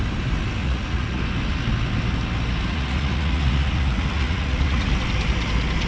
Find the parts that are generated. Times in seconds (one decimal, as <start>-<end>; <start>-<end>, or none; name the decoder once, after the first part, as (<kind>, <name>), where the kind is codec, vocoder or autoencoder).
0.6-1.2 (vocoder, Vocos); 2.7-4.9

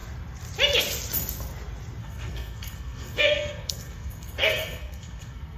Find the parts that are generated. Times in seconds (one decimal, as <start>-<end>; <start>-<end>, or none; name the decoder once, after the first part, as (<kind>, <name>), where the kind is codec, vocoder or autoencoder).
2.0-5.6 (codec, SNAC)

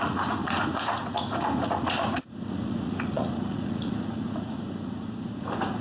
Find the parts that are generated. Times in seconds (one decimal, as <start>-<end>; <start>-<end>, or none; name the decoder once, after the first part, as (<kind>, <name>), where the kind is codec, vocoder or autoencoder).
0.0-5.8 (vocoder, Vocos)

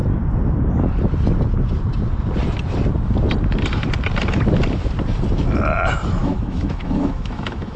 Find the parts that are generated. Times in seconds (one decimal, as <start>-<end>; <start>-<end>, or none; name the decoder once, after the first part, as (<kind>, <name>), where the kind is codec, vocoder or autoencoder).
6.2-7.8 (autoencoder, DAC-VAE)

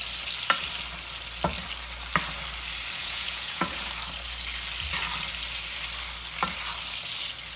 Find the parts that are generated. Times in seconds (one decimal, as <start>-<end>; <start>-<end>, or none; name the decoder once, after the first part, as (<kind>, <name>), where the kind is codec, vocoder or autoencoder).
3.0-3.8 (vocoder, Vocos)

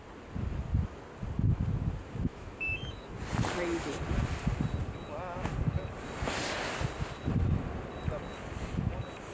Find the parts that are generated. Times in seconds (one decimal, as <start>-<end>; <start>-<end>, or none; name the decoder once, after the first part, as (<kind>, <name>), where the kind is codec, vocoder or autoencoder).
2.3-3.1 (autoencoder, DAC-VAE)

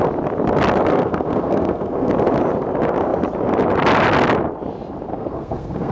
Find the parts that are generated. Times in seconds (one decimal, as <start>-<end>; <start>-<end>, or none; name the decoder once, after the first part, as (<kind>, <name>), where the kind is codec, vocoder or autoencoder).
0.9-2.1 (codec, SNAC); 5.1-5.9

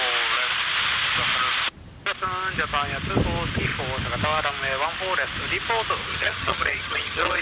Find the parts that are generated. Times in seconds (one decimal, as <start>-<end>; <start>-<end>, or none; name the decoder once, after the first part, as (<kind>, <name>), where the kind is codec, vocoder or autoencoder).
6.1-7.4 (vocoder, HiFi-GAN)